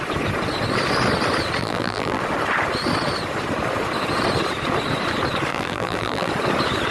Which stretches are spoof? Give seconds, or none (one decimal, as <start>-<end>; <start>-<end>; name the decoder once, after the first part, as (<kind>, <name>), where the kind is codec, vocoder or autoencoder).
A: 1.6-2.2 (vocoder, BigVGAN v2); 5.5-6.3